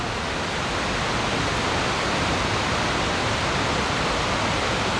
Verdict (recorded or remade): recorded